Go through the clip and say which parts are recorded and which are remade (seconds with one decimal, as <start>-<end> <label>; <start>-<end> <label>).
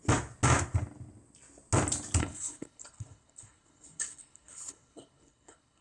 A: 0.0-2.2 recorded; 2.2-5.8 remade